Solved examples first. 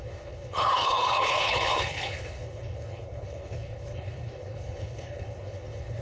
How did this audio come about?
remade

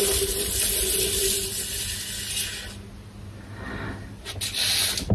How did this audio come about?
recorded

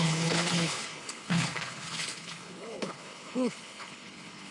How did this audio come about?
remade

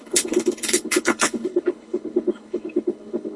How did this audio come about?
remade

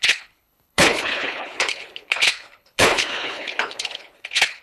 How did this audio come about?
remade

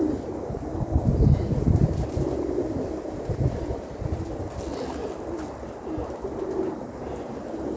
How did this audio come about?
recorded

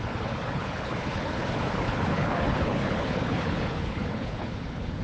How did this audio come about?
remade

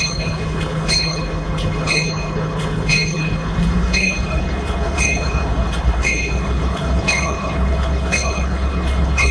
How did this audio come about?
remade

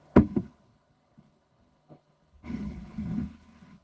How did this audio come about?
remade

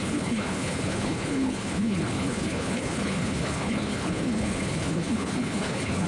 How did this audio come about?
remade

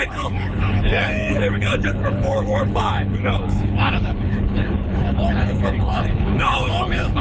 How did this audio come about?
remade